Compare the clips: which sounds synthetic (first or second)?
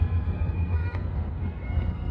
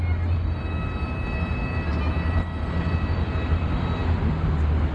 first